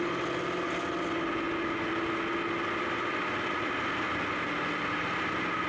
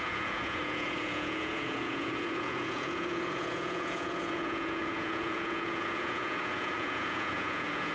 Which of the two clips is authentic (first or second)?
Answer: first